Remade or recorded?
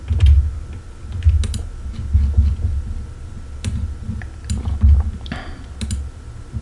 recorded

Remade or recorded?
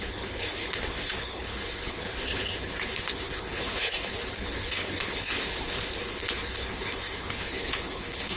remade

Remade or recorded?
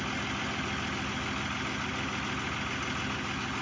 recorded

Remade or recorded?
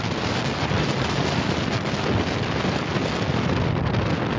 recorded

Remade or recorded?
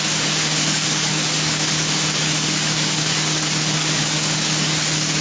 remade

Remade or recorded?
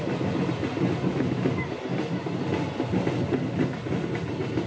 recorded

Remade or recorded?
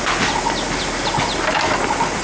recorded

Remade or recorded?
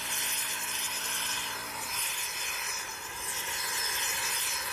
recorded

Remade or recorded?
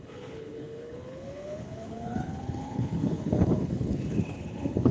remade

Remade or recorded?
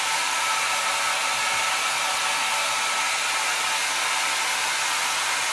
recorded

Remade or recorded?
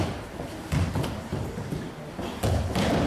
remade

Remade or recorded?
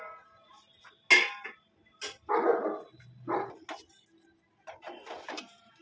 recorded